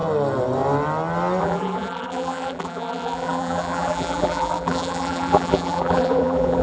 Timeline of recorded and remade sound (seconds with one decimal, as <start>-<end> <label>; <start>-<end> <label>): 0.0-1.4 recorded; 1.4-6.6 remade